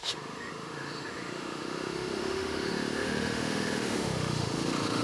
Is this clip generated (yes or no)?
yes